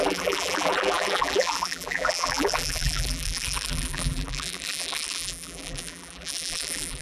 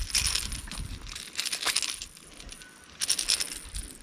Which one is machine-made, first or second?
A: first